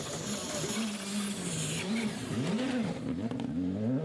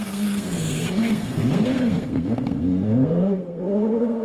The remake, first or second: second